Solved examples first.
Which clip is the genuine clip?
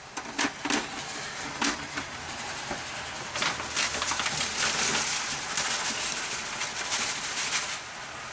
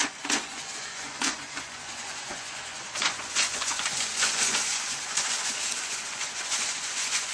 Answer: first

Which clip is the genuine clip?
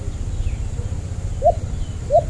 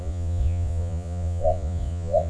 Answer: first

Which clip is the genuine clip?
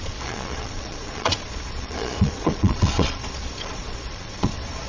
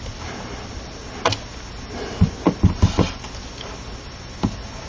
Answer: second